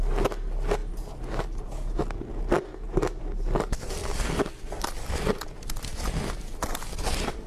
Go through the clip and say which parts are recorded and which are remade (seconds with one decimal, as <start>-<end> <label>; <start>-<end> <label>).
0.0-7.5 recorded